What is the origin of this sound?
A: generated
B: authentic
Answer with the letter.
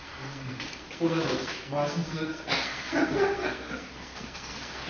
A